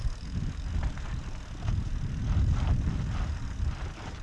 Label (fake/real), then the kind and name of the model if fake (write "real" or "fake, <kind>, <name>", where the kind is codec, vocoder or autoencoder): real